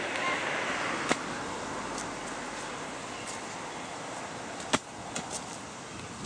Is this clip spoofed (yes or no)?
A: no